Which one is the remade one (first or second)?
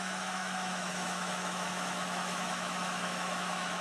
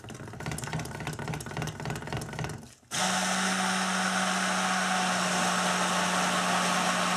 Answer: first